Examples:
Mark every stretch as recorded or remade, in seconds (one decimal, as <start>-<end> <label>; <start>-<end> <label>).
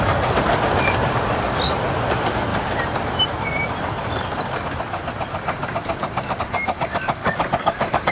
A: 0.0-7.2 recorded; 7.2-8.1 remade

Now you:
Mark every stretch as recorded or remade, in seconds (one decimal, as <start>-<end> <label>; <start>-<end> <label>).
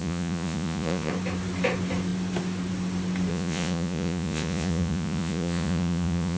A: 0.0-1.1 remade; 1.1-3.3 recorded; 3.3-6.4 remade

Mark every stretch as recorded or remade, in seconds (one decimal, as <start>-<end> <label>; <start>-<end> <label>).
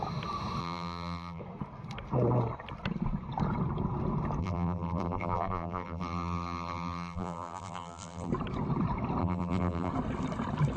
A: 0.0-0.6 recorded; 0.6-1.4 remade; 1.4-4.4 recorded; 4.4-8.3 remade; 8.3-9.2 recorded; 9.2-9.9 remade; 9.9-10.8 recorded